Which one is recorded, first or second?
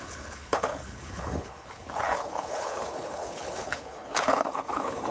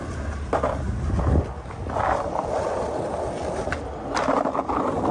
second